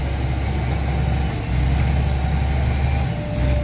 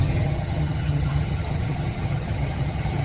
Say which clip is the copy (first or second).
second